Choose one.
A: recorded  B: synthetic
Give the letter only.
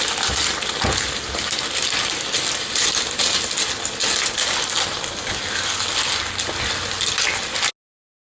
A